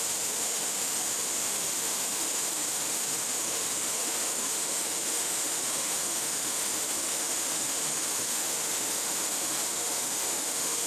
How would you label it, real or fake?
fake